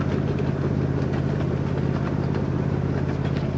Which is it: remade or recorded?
recorded